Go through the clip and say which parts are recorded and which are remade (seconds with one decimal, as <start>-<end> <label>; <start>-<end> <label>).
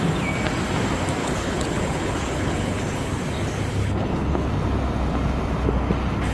0.0-1.2 recorded; 1.2-3.2 remade; 3.2-3.7 recorded; 3.7-4.5 remade; 4.5-6.3 recorded